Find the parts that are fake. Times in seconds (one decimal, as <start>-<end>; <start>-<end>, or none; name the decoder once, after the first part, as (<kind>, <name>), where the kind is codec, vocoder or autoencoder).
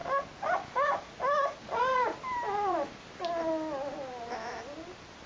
0.0-1.5 (vocoder, BigVGAN v2); 1.9-3.5